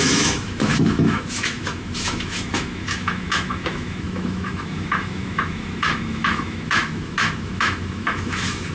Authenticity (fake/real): fake